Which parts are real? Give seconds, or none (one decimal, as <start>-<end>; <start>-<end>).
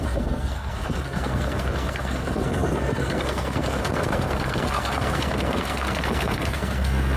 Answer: none